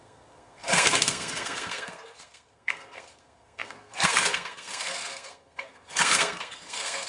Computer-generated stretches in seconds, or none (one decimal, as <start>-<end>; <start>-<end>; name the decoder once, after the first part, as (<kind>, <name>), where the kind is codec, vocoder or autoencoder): 0.0-7.1 (codec, SNAC)